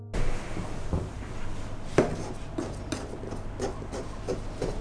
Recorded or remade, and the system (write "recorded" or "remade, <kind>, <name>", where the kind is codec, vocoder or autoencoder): recorded